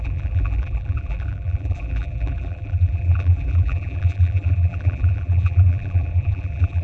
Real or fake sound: fake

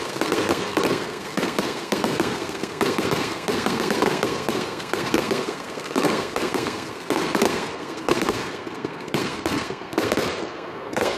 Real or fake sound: fake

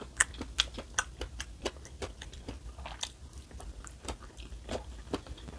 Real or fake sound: real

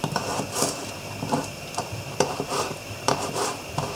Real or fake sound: fake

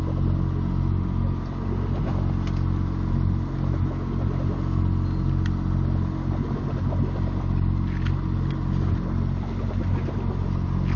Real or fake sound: real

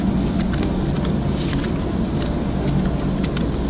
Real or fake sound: real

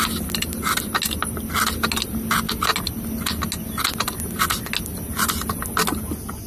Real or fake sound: real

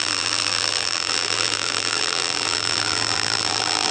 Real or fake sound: fake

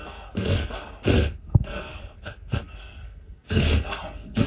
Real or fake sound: fake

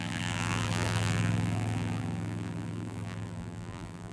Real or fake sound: fake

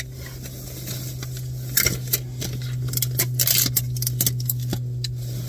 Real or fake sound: real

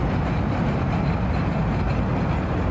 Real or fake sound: real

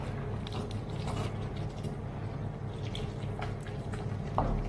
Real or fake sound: real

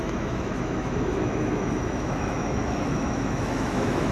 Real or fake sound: fake